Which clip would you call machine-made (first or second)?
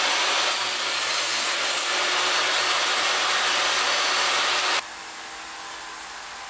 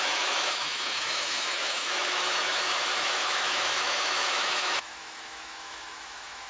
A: second